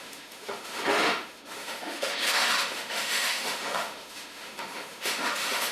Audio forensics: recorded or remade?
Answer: remade